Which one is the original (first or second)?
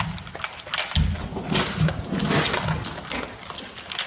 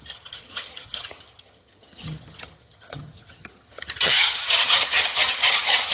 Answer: first